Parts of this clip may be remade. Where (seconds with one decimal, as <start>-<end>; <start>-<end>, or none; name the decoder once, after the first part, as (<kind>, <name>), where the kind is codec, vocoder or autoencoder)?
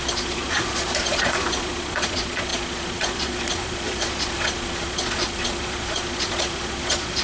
0.0-7.2 (vocoder, Vocos)